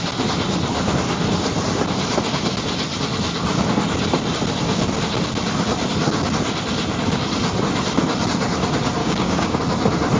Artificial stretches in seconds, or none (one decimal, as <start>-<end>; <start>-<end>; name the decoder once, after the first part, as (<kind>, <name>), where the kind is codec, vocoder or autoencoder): 9.0-9.6 (codec, DAC)

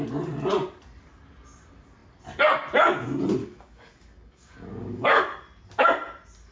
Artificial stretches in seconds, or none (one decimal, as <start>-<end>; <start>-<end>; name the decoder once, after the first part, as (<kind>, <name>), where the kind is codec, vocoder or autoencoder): 3.4-5.2 (codec, DAC)